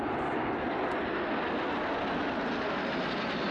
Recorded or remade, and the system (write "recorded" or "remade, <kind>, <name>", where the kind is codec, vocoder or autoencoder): recorded